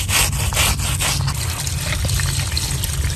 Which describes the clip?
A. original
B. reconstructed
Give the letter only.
A